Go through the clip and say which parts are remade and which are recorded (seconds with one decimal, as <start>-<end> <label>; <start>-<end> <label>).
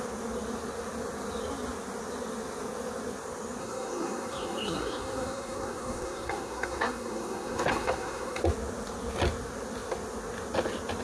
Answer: 0.0-3.6 recorded; 3.6-8.4 remade; 8.4-11.0 recorded